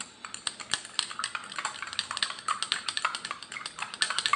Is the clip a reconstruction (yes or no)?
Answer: no